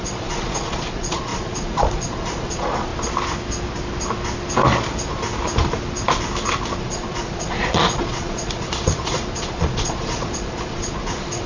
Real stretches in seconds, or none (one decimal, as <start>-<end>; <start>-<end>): 2.9-6.8